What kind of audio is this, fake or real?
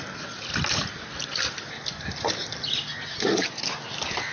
real